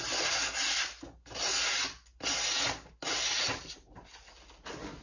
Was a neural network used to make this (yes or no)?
no